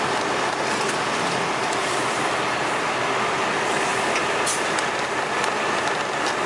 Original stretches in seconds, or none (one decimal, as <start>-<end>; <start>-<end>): 0.0-1.8; 2.4-6.5